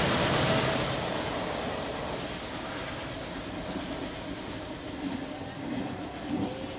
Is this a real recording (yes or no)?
yes